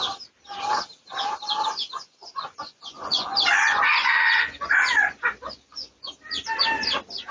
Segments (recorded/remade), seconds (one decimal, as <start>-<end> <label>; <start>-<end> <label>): 0.0-1.7 recorded; 1.7-6.1 remade; 6.1-7.3 recorded